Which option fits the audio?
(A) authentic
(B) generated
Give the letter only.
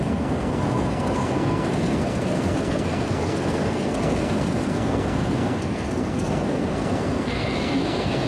B